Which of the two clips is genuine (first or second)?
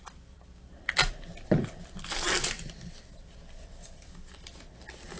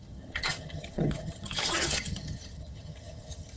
first